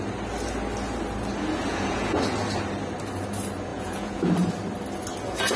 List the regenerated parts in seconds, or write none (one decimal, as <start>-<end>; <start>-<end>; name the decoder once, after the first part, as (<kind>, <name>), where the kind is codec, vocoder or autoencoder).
1.7-2.2 (vocoder, Vocos); 3.7-4.2